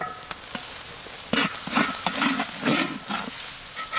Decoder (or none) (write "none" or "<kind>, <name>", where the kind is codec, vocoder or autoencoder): none